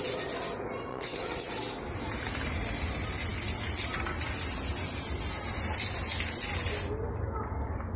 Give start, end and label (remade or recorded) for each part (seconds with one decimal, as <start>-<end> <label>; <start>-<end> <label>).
0.0-0.9 recorded; 0.9-1.5 remade; 1.5-8.0 recorded